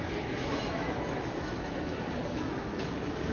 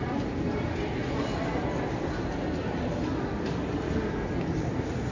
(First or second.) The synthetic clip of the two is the first